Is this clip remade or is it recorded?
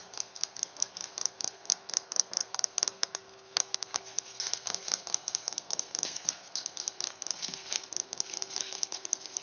remade